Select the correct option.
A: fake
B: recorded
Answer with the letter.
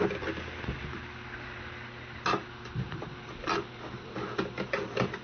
B